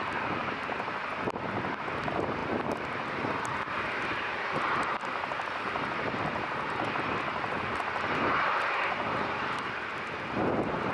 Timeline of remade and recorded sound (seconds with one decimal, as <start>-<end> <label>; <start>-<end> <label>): 0.0-1.1 remade; 1.1-1.8 recorded; 1.8-9.9 remade; 9.9-10.9 recorded